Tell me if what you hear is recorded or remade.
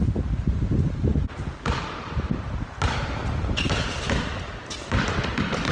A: recorded